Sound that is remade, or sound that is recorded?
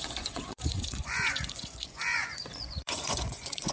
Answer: remade